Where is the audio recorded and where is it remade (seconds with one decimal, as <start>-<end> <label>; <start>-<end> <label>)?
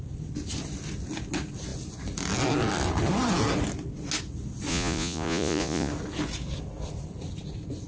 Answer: 0.0-4.7 recorded; 4.7-5.9 remade; 5.9-7.9 recorded